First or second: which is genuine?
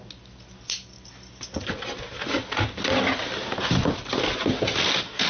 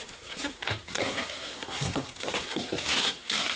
first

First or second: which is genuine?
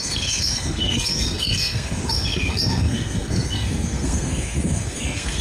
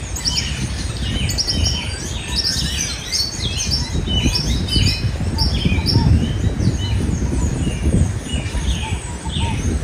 second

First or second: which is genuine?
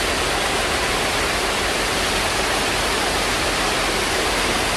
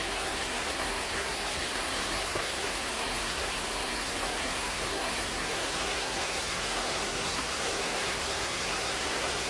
first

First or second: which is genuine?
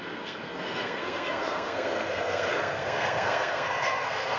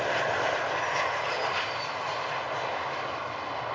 second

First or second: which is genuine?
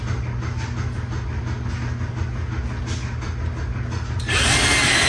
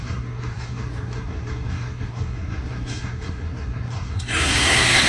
first